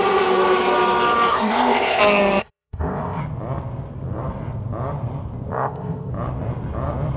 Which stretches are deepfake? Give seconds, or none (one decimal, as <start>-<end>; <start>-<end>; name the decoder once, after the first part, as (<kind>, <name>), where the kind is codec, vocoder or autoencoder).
1.3-2.0 (codec, ZipCodec); 2.4-3.2; 5.5-6.1